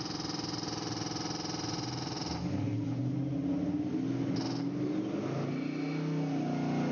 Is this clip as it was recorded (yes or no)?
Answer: yes